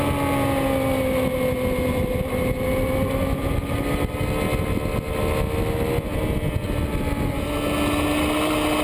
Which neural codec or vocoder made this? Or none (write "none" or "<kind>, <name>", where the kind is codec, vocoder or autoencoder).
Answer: none